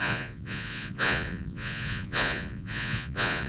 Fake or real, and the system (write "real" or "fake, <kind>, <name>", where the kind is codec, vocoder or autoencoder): fake, vocoder, Vocos